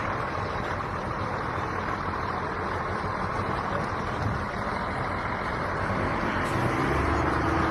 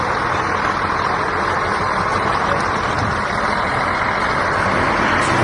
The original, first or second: second